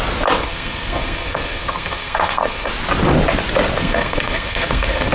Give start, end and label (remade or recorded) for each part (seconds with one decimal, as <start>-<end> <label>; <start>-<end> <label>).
0.0-0.4 recorded; 0.4-2.7 remade; 2.7-3.8 recorded; 3.8-5.1 remade